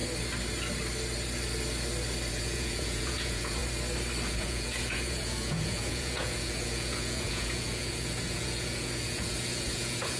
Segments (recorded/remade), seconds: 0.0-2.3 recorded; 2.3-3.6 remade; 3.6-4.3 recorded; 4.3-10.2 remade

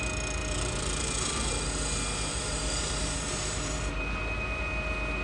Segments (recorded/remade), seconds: 0.0-0.4 recorded; 0.4-1.5 remade; 1.5-2.3 recorded; 2.3-4.6 remade; 4.6-5.2 recorded

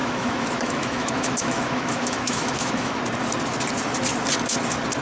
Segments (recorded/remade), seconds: 0.0-3.0 remade; 3.0-5.0 recorded

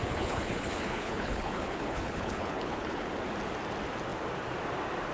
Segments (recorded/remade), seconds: 0.0-3.1 remade; 3.1-5.1 recorded

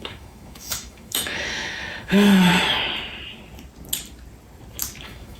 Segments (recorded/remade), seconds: 0.0-2.5 remade; 2.5-5.0 recorded; 5.0-5.4 remade

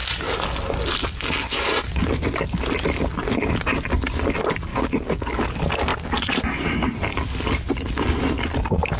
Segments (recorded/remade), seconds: 0.0-4.7 recorded; 4.7-5.5 remade; 5.5-9.0 recorded